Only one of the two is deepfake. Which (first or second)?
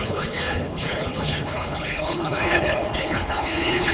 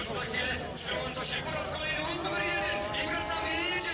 first